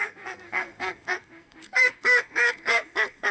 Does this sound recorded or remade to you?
remade